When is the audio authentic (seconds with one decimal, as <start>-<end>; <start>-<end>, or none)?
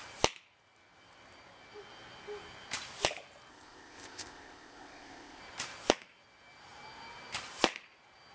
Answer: 0.0-3.5; 5.4-8.3